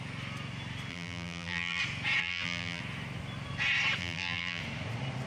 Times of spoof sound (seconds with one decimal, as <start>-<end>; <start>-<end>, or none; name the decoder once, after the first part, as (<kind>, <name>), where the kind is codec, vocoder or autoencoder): 0.9-1.8 (vocoder, BigVGAN v2); 2.2-2.8; 4.0-4.6